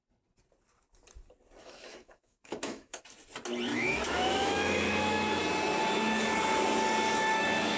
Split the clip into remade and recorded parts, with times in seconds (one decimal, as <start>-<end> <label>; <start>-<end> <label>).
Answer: 0.0-1.6 recorded; 1.6-3.0 remade; 3.0-3.7 recorded; 3.7-5.4 remade; 5.4-7.1 recorded; 7.1-7.8 remade